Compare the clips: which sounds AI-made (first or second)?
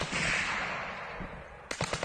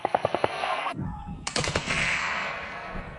second